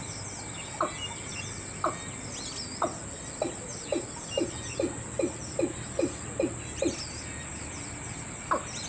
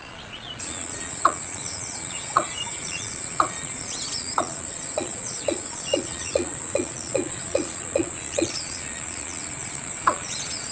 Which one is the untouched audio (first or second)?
first